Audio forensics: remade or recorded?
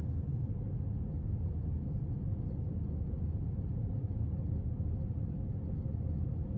recorded